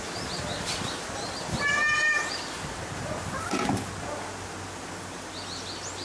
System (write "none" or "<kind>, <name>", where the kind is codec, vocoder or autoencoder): none